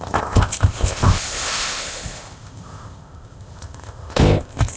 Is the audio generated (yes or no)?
yes